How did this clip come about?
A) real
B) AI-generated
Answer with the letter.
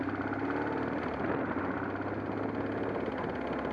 A